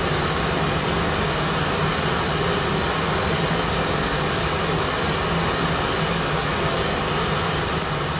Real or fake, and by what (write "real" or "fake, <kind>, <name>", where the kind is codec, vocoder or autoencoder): real